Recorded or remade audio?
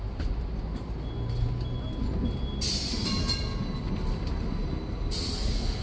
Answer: recorded